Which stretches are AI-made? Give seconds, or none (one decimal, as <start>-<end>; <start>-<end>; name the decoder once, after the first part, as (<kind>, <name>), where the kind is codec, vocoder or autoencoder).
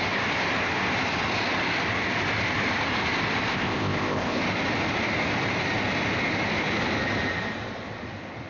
3.5-4.4 (codec, ZipCodec)